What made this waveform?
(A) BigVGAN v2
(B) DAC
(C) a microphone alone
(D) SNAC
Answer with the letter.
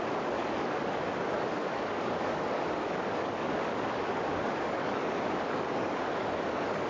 B